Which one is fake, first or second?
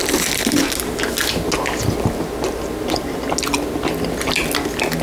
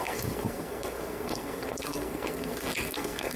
second